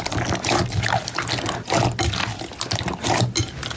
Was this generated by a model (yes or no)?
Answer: no